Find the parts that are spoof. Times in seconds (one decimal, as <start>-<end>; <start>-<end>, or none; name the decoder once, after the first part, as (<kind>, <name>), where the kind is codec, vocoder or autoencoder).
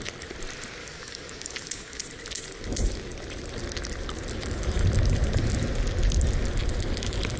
0.8-2.0 (codec, DAC)